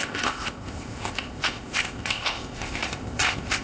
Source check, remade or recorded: remade